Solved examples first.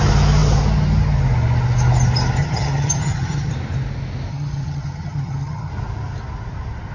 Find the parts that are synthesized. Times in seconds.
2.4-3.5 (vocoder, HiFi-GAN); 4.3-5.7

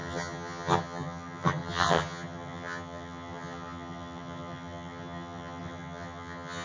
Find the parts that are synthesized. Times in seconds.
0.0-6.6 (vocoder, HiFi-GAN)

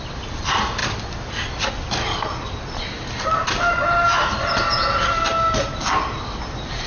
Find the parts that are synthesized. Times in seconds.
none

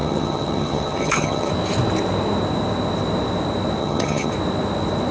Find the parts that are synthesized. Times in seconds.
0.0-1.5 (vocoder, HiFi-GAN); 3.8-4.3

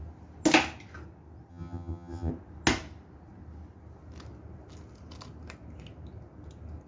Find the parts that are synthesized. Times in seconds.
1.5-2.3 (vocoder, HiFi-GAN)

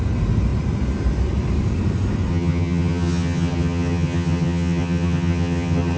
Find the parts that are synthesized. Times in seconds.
2.3-6.0 (vocoder, HiFi-GAN)